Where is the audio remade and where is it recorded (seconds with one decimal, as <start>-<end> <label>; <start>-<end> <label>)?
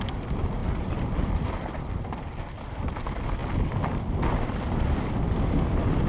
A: 0.0-6.1 recorded